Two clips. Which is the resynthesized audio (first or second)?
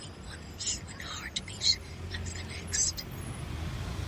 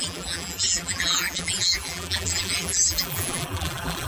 second